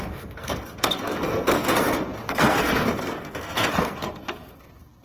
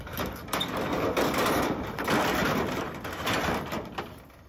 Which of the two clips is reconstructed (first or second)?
first